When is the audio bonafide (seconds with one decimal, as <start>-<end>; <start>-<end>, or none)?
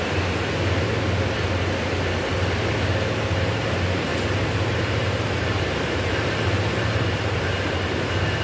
0.0-4.1; 8.0-8.4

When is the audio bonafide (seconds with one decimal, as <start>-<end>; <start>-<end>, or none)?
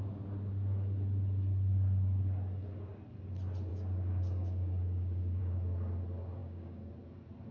0.0-3.7; 5.4-6.4; 6.9-7.5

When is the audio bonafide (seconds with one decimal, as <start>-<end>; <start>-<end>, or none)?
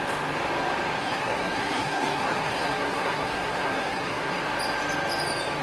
0.0-1.0; 4.4-5.6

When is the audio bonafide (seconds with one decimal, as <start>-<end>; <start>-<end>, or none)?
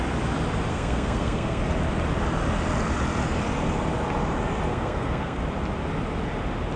0.0-0.7; 1.6-4.7; 5.4-6.8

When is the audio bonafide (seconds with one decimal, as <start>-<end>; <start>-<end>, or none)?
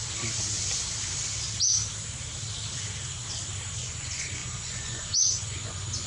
0.0-3.7